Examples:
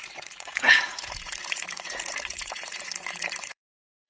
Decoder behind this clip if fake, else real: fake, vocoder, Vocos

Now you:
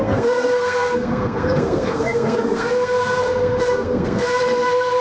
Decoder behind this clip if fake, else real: fake, codec, SNAC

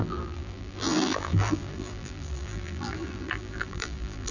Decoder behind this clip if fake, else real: fake, vocoder, BigVGAN v2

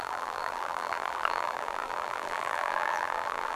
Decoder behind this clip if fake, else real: fake, vocoder, BigVGAN v2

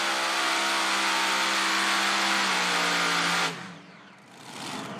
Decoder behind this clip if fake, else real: real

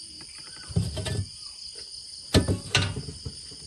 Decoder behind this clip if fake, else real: real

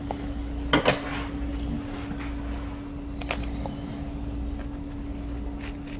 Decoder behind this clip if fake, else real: real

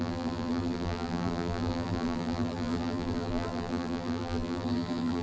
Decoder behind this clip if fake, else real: fake, vocoder, BigVGAN v2